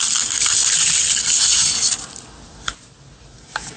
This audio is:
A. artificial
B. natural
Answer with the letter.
B